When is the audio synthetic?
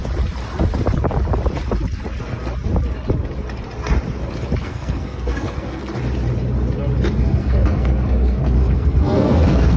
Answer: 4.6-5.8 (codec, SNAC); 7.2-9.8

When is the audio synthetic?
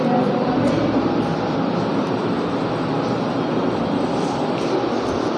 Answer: none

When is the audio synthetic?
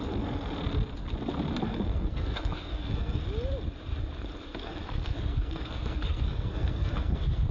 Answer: 1.7-3.2 (codec, SNAC); 4.5-7.5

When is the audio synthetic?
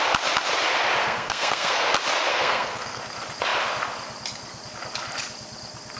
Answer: 1.0-1.9 (codec, SNAC); 2.3-3.0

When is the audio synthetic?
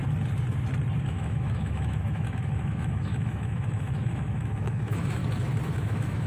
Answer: 1.0-5.2 (autoencoder, DAC-VAE); 5.7-6.3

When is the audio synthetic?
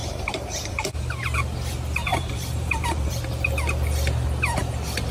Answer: 0.0-1.0 (vocoder, BigVGAN v2); 2.1-3.1